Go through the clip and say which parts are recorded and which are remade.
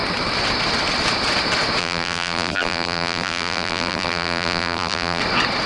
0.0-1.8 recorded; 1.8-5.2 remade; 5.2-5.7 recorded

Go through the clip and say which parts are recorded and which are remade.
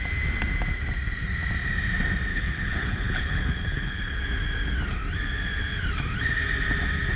0.0-2.3 recorded; 2.3-4.2 remade; 4.2-7.2 recorded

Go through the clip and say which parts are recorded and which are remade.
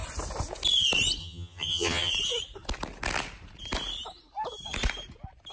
0.0-1.2 recorded; 1.2-2.1 remade; 2.1-5.5 recorded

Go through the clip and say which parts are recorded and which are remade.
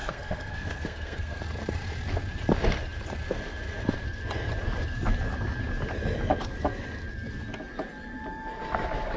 0.0-1.4 remade; 1.4-9.2 recorded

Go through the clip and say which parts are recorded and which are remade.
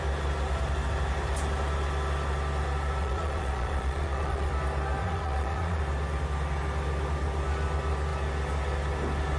0.0-3.0 recorded; 3.0-4.5 remade; 4.5-5.0 recorded; 5.0-5.8 remade; 5.8-9.4 recorded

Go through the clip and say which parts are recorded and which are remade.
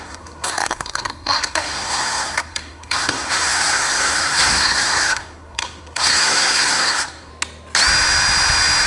0.0-7.3 remade; 7.3-8.9 recorded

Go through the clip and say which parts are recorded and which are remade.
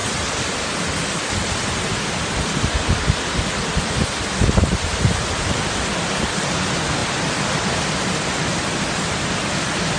0.0-10.0 recorded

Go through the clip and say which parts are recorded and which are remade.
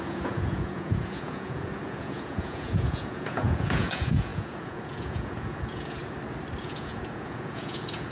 0.0-6.0 remade; 6.0-6.6 recorded; 6.6-8.1 remade